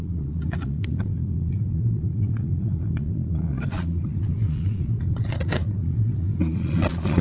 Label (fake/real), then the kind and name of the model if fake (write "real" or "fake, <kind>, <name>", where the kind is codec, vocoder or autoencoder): fake, vocoder, Vocos